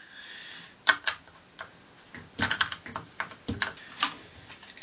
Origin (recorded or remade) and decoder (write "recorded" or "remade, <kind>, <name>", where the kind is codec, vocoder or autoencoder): recorded